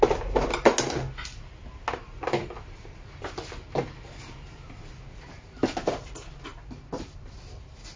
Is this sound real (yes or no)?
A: yes